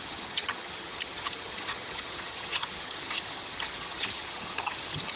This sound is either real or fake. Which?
fake